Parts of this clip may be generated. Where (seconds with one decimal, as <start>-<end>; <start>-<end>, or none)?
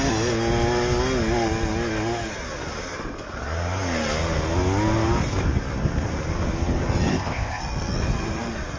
7.1-7.6